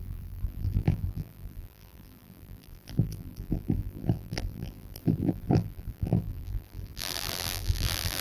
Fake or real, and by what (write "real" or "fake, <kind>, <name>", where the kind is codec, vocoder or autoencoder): fake, vocoder, BigVGAN v2